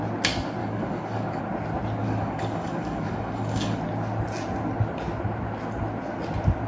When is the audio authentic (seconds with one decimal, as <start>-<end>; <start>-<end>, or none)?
0.0-0.6; 1.4-2.0; 3.8-6.7